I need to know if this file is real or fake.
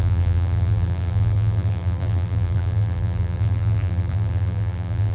fake